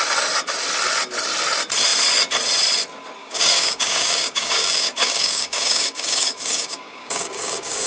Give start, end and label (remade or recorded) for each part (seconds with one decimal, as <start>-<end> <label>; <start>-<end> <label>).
0.0-3.2 recorded; 3.2-7.9 remade